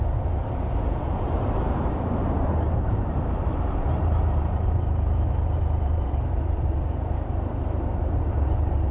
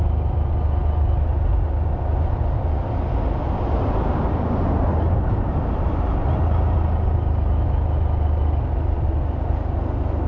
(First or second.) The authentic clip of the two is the second